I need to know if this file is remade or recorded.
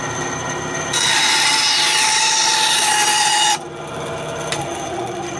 recorded